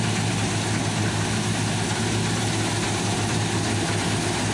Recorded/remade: recorded